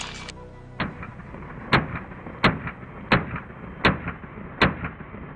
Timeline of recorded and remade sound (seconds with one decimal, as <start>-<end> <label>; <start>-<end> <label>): 0.0-5.4 recorded